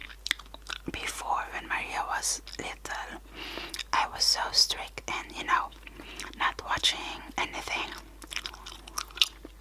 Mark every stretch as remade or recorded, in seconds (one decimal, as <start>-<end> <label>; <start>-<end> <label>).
0.0-9.6 recorded